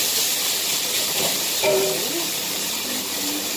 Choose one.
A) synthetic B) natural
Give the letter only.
A